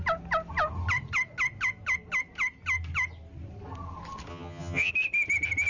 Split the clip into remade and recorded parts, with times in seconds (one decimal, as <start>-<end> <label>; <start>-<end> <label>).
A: 0.0-4.3 recorded; 4.3-4.9 remade; 4.9-5.7 recorded